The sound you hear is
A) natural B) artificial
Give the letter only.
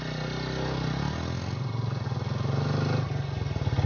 A